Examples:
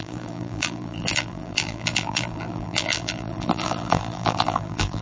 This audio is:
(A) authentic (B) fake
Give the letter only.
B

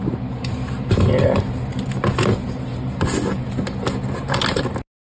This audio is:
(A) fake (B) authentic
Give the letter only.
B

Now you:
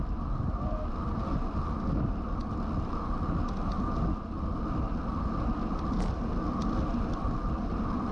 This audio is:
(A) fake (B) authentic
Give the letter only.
B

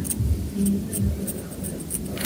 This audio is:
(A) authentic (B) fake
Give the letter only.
A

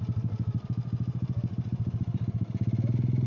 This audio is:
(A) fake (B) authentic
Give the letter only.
B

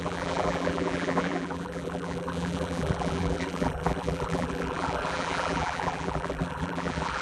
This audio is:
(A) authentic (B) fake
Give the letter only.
B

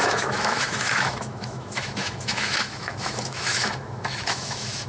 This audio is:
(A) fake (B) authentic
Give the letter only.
A